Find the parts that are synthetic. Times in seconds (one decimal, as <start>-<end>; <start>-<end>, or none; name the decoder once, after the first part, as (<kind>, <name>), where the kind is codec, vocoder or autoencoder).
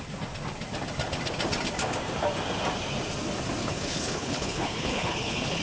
3.6-5.6 (codec, HILCodec)